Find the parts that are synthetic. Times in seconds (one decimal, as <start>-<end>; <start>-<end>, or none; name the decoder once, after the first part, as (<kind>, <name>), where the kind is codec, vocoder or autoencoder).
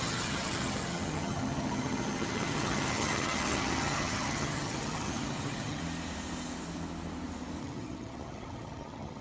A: 0.0-5.8 (vocoder, HiFi-GAN); 7.6-9.2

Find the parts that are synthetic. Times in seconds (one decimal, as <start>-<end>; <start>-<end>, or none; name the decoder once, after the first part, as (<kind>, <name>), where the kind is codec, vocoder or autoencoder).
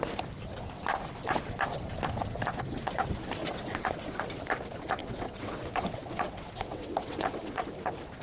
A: 3.4-4.2 (vocoder, WaveNeXt); 5.0-7.6